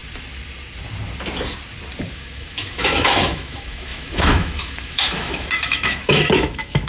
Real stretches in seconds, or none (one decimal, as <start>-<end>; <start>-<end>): 0.0-2.1